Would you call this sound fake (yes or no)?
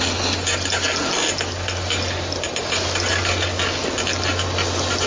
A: no